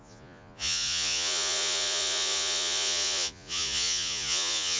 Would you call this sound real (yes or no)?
no